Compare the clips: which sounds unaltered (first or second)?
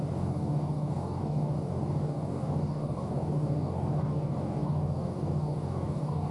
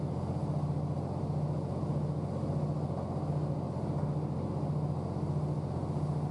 second